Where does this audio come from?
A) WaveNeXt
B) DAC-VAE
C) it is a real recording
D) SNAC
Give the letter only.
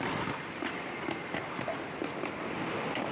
C